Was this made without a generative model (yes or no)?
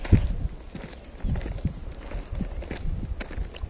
yes